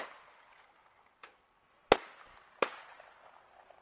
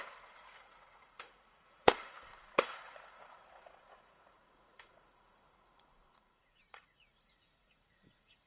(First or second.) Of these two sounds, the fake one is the second